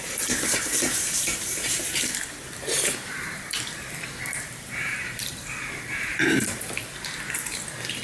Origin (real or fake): fake